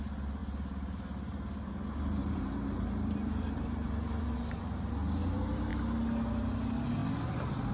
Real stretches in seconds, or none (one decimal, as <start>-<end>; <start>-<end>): 0.0-2.2; 4.5-7.7